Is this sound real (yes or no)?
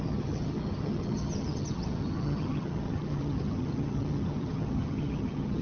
no